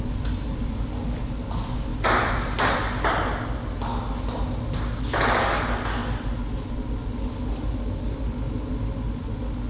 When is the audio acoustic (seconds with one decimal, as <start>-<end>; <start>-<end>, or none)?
0.0-9.7